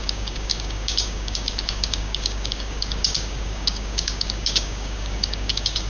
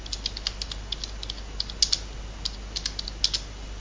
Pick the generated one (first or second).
first